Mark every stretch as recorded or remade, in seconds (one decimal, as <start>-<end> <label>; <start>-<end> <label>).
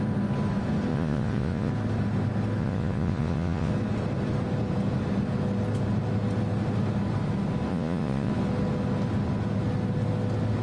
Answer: 0.0-0.9 recorded; 0.9-1.7 remade; 1.7-2.6 recorded; 2.6-3.7 remade; 3.7-7.7 recorded; 7.7-8.3 remade; 8.3-10.6 recorded